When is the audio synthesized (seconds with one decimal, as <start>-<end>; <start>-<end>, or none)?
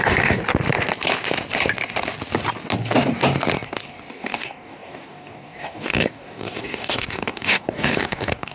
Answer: 0.0-0.4; 4.1-8.5